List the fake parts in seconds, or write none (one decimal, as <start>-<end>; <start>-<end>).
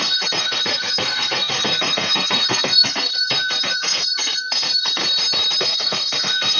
0.0-5.0; 5.6-6.6